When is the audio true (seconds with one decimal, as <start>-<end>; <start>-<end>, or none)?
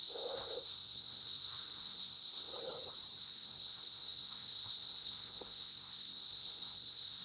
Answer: 2.5-3.2